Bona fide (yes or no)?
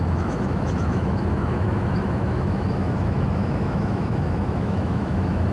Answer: no